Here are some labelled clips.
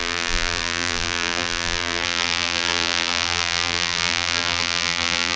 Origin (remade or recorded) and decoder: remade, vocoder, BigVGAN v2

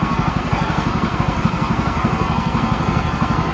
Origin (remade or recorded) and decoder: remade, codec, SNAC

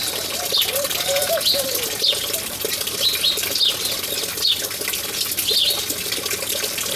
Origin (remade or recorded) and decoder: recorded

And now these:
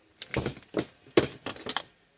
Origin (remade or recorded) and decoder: recorded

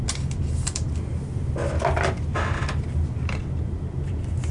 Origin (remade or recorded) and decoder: recorded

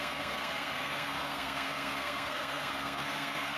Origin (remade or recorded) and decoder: remade, codec, SNAC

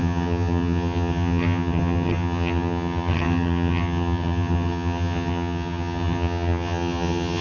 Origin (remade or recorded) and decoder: remade, vocoder, HiFi-GAN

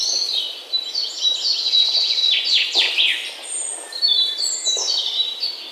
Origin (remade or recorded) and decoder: recorded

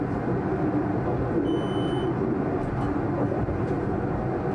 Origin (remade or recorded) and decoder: recorded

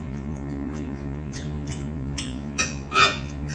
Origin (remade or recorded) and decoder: remade, vocoder, Vocos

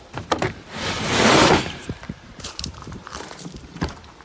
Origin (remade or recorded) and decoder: remade, vocoder, BigVGAN v2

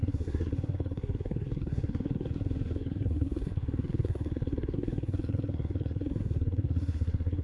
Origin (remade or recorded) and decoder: remade, codec, SNAC